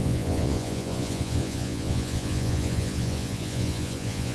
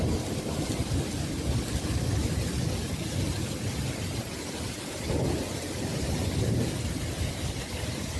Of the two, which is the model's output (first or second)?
first